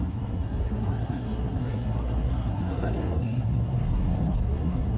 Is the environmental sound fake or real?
fake